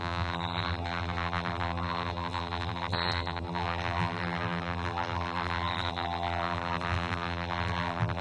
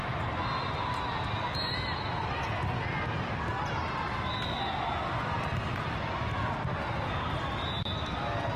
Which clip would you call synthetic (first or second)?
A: first